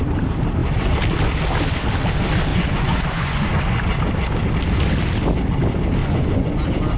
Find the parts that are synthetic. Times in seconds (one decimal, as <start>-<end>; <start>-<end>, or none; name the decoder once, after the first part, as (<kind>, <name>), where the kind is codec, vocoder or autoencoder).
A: 2.5-3.5 (vocoder, Vocos); 6.0-6.5